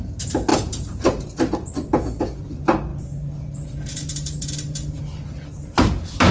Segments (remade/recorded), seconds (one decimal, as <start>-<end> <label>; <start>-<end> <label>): 0.0-2.9 recorded; 2.9-5.0 remade; 5.0-6.3 recorded